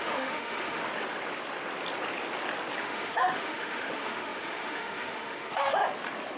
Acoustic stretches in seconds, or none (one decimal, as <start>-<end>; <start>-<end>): 0.8-2.8; 5.8-6.4